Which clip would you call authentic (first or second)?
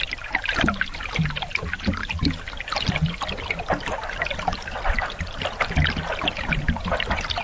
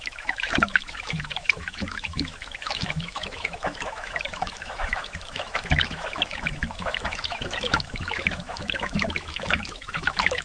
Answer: first